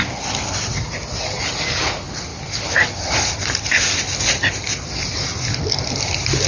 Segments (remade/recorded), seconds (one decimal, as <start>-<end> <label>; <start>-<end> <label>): 0.0-6.5 recorded